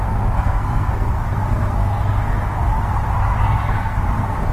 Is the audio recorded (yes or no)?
no